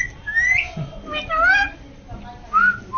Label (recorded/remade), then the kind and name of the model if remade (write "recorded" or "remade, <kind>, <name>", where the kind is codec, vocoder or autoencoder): recorded